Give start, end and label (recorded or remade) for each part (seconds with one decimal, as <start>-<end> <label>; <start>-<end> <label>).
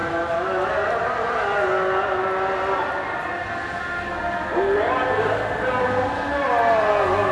0.0-2.2 recorded; 2.2-3.4 remade; 3.4-7.3 recorded